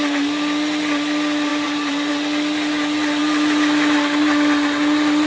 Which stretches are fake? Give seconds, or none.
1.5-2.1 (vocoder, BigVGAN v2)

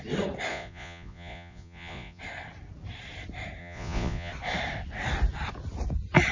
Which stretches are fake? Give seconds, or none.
0.5-2.2 (vocoder, Vocos); 3.6-4.3